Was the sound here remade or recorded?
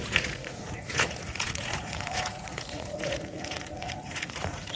remade